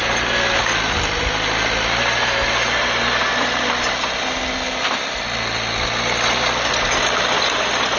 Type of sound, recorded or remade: recorded